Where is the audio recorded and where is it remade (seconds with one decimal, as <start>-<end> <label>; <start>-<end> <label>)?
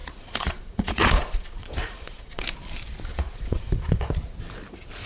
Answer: 0.0-2.4 remade; 2.4-3.1 recorded; 3.1-4.1 remade; 4.1-5.1 recorded